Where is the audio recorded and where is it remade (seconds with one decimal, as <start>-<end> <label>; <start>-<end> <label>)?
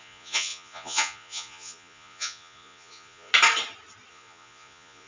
0.0-3.3 remade; 3.3-4.1 recorded; 4.1-5.1 remade